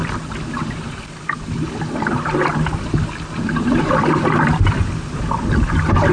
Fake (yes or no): no